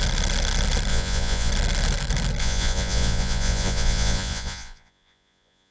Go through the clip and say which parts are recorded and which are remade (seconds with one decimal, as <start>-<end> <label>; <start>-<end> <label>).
0.0-0.9 recorded; 0.9-1.5 remade; 1.5-2.4 recorded; 2.4-5.7 remade

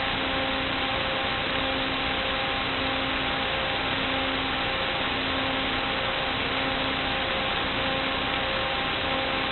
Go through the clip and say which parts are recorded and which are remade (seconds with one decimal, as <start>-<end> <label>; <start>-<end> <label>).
0.0-9.5 recorded

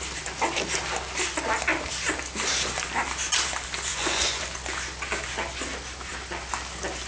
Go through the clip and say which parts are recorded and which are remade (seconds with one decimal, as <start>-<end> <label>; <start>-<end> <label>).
0.0-3.9 recorded; 3.9-4.4 remade; 4.4-7.1 recorded

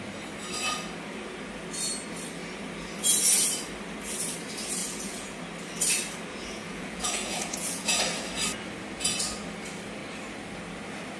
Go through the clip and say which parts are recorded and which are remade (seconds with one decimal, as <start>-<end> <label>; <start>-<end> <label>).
0.0-4.8 recorded; 4.8-5.4 remade; 5.4-6.3 recorded; 6.3-8.0 remade; 8.0-11.2 recorded

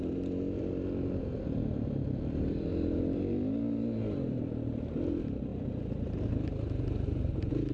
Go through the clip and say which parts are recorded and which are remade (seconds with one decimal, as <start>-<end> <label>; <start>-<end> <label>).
0.0-7.7 recorded

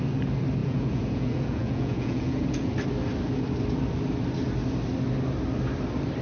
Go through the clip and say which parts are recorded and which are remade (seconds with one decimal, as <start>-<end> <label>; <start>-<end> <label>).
0.0-0.6 recorded; 0.6-2.7 remade; 2.7-6.2 recorded